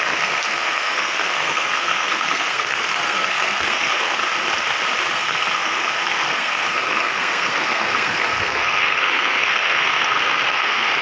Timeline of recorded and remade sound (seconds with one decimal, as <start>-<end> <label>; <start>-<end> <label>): 0.0-4.2 remade; 4.2-5.1 recorded; 5.1-11.0 remade